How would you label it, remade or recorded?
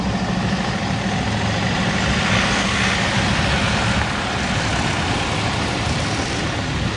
recorded